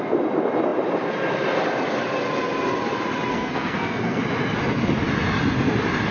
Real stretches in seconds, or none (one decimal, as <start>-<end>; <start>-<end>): 0.0-3.3; 4.2-6.1